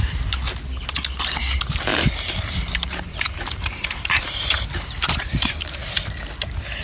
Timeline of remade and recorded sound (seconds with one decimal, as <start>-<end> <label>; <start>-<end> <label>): 0.0-1.9 recorded; 1.9-5.9 remade; 5.9-6.8 recorded

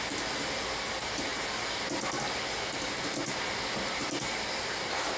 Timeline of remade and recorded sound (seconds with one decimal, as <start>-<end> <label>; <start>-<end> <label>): 0.0-5.2 recorded

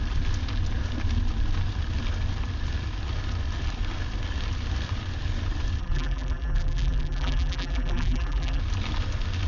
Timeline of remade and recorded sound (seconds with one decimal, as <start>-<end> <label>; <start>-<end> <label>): 0.0-5.8 recorded; 5.8-8.6 remade; 8.6-9.5 recorded

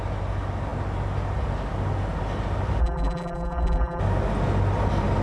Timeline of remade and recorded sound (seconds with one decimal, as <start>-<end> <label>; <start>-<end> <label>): 0.0-2.8 recorded; 2.8-4.0 remade; 4.0-5.2 recorded

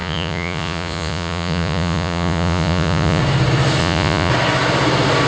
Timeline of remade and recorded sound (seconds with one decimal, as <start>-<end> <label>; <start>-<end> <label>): 0.0-3.2 remade; 3.2-3.8 recorded; 3.8-4.3 remade; 4.3-5.3 recorded

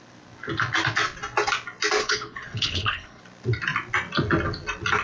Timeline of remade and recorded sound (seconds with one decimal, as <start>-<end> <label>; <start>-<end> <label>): 0.0-2.0 recorded; 2.0-3.2 remade; 3.2-5.0 recorded

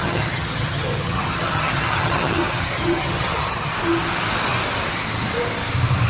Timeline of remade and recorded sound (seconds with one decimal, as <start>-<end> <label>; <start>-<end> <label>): 0.0-3.7 remade; 3.7-6.1 recorded

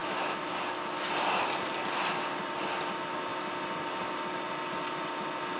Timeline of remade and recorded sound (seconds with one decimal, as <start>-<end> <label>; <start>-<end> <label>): 0.0-0.6 remade; 0.6-5.6 recorded